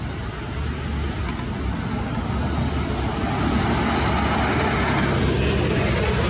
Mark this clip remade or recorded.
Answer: recorded